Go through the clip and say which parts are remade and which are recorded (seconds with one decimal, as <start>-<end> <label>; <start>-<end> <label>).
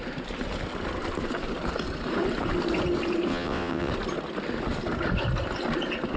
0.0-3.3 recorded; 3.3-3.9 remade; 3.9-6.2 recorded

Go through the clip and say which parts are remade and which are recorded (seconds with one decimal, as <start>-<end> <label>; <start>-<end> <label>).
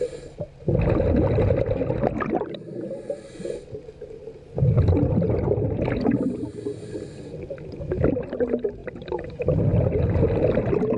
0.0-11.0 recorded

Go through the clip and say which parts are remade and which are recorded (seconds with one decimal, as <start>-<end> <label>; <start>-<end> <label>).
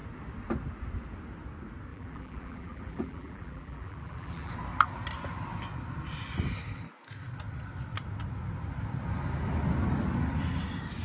0.0-1.9 recorded; 1.9-4.5 remade; 4.5-11.0 recorded